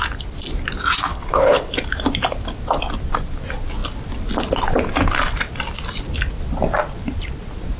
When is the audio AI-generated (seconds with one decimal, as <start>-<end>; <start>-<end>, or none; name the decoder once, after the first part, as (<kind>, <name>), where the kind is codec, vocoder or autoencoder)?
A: 1.1-1.7 (codec, HILCodec)

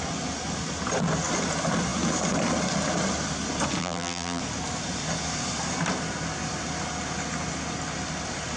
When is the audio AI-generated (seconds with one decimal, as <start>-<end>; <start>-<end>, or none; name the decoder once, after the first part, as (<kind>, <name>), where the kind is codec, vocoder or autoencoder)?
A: 3.8-4.4 (vocoder, BigVGAN v2)

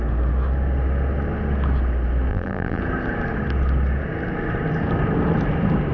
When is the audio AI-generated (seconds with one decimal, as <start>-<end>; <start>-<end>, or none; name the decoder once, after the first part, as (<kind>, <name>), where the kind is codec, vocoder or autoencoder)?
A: 2.3-2.8 (vocoder, BigVGAN v2)

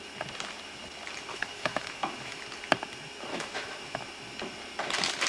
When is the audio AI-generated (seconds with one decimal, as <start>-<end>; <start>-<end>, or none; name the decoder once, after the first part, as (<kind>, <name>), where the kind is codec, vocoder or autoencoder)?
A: 1.3-2.4 (autoencoder, DAC-VAE); 3.3-4.0

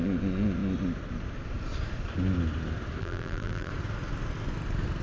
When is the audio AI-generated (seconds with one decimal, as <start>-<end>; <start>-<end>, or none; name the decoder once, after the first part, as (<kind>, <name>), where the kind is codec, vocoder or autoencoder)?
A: 3.0-3.7 (vocoder, BigVGAN v2)

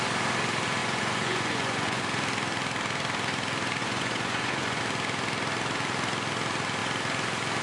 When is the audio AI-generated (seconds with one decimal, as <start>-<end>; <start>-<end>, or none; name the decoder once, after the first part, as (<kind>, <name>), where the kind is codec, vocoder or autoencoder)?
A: 0.8-2.0 (vocoder, Vocos); 3.8-4.8

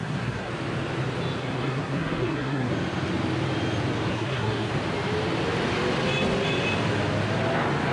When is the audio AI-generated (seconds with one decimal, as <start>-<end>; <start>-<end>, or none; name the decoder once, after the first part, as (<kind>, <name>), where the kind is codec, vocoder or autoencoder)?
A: 0.0-0.5 (codec, SNAC); 1.4-2.7; 4.1-4.7